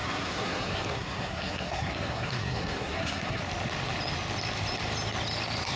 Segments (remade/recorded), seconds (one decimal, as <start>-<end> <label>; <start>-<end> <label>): 0.0-3.4 remade; 3.4-5.8 recorded